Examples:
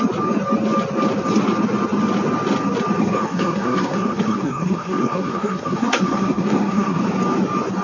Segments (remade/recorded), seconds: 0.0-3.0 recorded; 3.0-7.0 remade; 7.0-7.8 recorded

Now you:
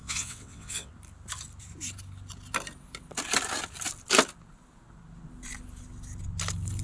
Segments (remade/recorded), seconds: 0.0-0.9 remade; 0.9-6.8 recorded

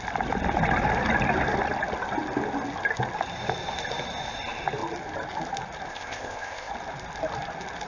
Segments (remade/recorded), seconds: 0.0-5.9 recorded; 5.9-6.7 remade; 6.7-7.9 recorded